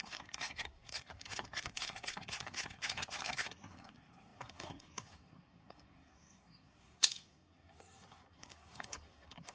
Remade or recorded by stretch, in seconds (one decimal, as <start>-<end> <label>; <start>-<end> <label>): 0.0-9.5 remade